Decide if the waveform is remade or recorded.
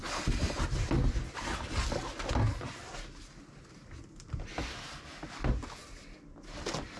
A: recorded